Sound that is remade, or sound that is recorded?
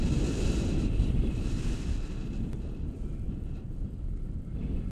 recorded